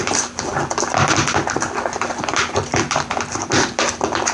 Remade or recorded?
remade